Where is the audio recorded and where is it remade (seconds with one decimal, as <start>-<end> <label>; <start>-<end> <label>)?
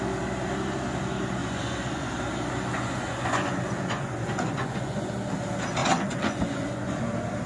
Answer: 0.0-1.4 recorded; 1.4-2.1 remade; 2.1-2.7 recorded; 2.7-5.1 remade; 5.1-5.8 recorded; 5.8-7.0 remade; 7.0-7.5 recorded